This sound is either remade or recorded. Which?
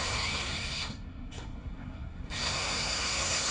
remade